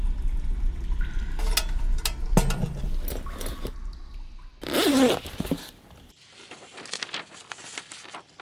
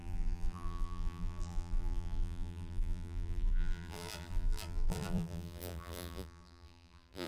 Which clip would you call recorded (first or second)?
first